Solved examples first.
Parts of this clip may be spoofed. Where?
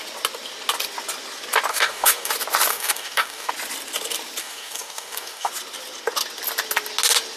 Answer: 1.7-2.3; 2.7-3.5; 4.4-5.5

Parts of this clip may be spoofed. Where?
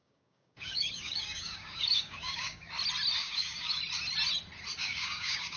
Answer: 0.0-2.7; 3.2-3.8; 4.8-5.6